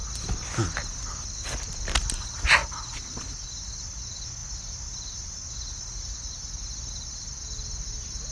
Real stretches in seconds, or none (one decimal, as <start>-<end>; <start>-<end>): 0.0-8.3